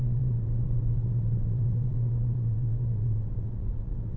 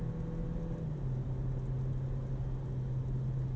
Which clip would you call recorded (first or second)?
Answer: second